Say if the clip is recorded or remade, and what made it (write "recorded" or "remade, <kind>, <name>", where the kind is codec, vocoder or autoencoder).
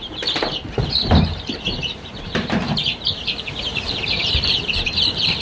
remade, vocoder, BigVGAN v2